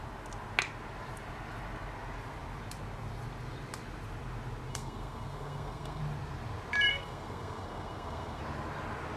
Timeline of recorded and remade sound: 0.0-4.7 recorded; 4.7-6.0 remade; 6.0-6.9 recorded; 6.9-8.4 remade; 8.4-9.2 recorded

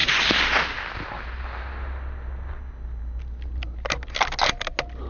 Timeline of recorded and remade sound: 0.0-5.1 recorded

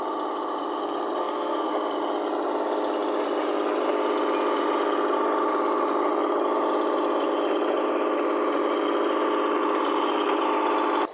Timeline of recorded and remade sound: 0.0-1.2 recorded; 1.2-1.7 remade; 1.7-11.1 recorded

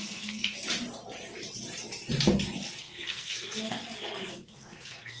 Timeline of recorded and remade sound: 0.0-0.6 remade; 0.6-2.8 recorded; 2.8-3.8 remade; 3.8-4.3 recorded; 4.3-5.2 remade